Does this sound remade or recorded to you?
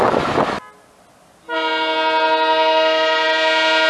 recorded